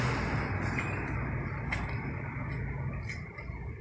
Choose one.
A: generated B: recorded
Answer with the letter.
B